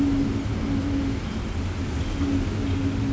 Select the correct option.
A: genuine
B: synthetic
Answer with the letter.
A